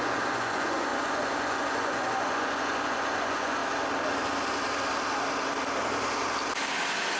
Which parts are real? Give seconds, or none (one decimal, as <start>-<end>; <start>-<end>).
3.6-7.2